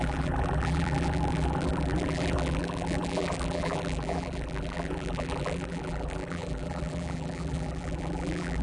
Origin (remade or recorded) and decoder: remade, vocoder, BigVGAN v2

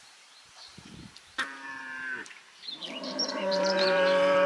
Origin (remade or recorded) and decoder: remade, vocoder, BigVGAN v2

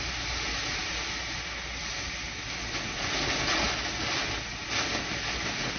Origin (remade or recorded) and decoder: recorded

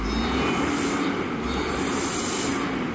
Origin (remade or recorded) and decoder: recorded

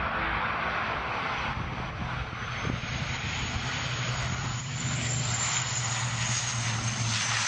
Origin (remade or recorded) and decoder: recorded